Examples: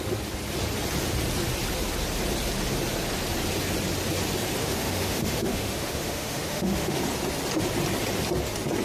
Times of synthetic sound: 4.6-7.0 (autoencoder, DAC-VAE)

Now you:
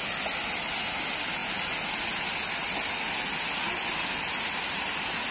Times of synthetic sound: none

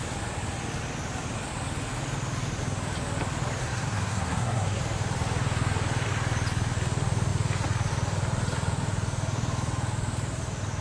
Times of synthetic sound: 3.6-4.8 (codec, SNAC)